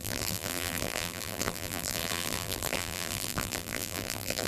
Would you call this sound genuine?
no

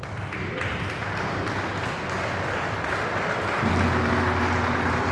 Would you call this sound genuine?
yes